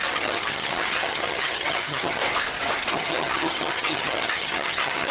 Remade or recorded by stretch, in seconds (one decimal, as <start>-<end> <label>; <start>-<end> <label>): 0.0-2.2 remade; 2.2-2.9 recorded; 2.9-5.1 remade